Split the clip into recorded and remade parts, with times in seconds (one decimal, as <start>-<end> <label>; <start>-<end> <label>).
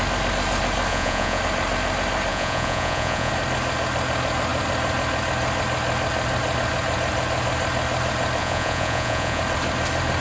0.0-0.9 recorded; 0.9-1.4 remade; 1.4-2.3 recorded; 2.3-3.3 remade; 3.3-8.4 recorded; 8.4-9.4 remade; 9.4-10.2 recorded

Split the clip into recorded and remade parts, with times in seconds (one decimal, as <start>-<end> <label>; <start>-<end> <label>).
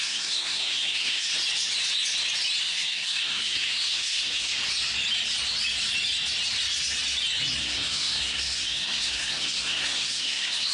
0.0-1.3 remade; 1.3-2.6 recorded; 2.6-4.6 remade; 4.6-7.6 recorded; 7.6-10.7 remade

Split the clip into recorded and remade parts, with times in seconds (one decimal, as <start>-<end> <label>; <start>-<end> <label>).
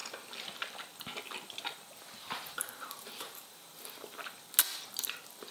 0.0-2.2 recorded; 2.2-4.2 remade; 4.2-5.5 recorded